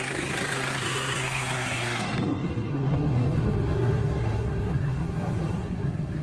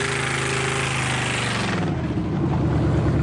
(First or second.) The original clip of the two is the second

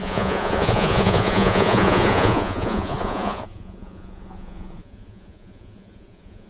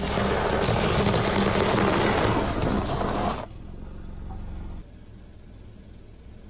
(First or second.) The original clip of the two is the second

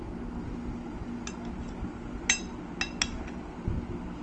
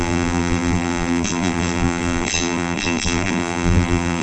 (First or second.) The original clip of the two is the first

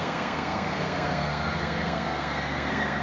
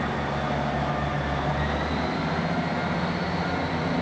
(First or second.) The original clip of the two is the second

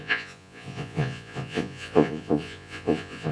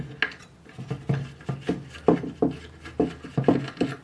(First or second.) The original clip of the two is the second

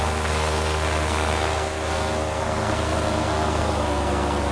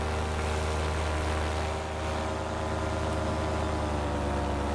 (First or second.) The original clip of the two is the second